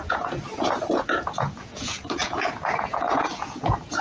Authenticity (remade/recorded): remade